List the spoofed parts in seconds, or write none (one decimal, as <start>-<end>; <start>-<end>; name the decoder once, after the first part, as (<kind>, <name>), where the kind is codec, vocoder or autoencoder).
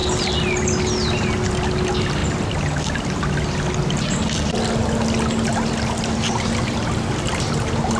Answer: none